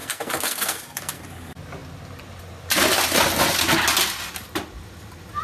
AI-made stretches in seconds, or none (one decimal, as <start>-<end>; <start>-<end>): 0.0-1.2